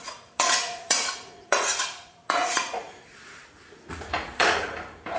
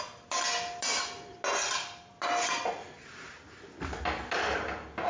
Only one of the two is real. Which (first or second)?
second